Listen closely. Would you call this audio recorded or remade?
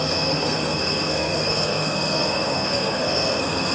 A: remade